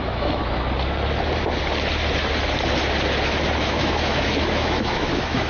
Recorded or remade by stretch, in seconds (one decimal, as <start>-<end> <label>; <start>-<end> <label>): 0.0-0.4 remade; 0.4-3.6 recorded; 3.6-5.5 remade